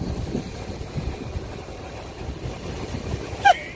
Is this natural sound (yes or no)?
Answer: no